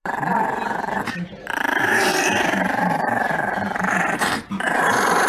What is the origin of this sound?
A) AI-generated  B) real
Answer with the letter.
A